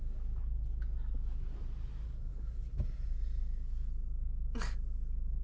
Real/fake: real